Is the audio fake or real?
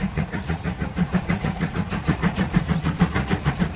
fake